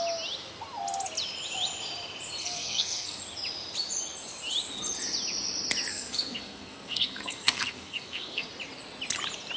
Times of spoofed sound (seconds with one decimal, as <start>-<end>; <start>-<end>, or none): 2.4-3.2; 5.9-8.5